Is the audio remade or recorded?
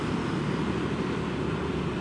recorded